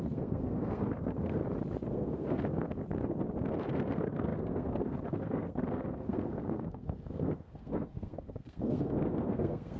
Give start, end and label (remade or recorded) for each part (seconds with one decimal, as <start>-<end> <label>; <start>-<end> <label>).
0.0-1.4 remade; 1.4-1.9 recorded; 1.9-2.8 remade; 2.8-3.7 recorded; 3.7-9.8 remade

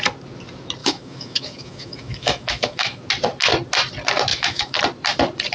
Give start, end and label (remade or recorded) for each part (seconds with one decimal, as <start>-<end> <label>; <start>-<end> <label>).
0.0-0.8 recorded; 0.8-3.0 remade; 3.0-4.3 recorded; 4.3-4.8 remade; 4.8-5.5 recorded

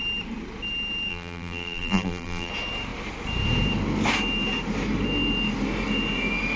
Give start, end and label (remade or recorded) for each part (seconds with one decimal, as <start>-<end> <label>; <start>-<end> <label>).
0.0-1.1 recorded; 1.1-2.5 remade; 2.5-6.6 recorded

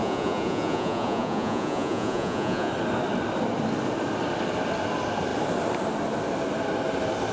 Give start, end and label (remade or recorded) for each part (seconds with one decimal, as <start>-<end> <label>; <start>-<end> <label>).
0.0-2.7 remade; 2.7-7.3 recorded

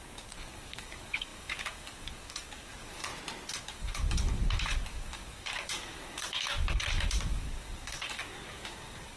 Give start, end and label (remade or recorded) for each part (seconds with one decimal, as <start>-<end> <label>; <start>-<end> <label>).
0.0-3.1 remade; 3.1-3.6 recorded; 3.6-9.2 remade

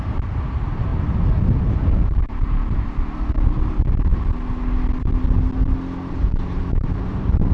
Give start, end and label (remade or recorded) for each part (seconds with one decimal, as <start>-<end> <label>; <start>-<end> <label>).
0.0-0.9 remade; 0.9-1.6 recorded; 1.6-4.1 remade; 4.1-6.1 recorded; 6.1-7.5 remade

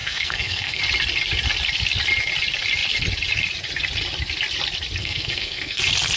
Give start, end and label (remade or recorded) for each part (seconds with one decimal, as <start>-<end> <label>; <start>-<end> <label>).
0.0-0.8 remade; 0.8-5.0 recorded; 5.0-5.8 remade; 5.8-6.2 recorded

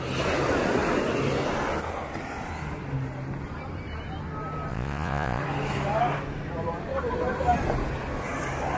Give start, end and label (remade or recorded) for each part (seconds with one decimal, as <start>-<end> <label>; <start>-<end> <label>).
0.0-4.7 recorded; 4.7-5.4 remade; 5.4-8.8 recorded